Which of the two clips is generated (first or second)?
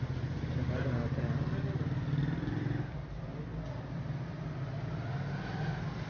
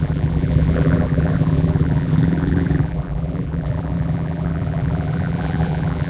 second